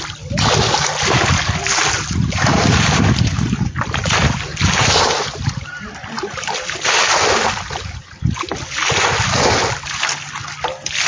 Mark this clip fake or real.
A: real